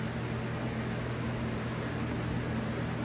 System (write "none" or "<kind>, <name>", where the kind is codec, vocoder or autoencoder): none